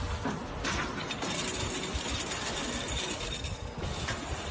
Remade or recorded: recorded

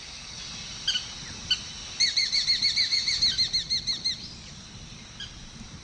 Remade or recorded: recorded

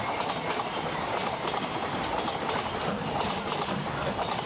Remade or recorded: recorded